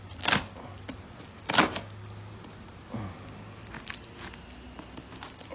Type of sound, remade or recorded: recorded